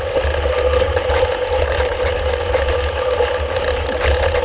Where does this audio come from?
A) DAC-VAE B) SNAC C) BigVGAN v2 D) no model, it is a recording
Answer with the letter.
D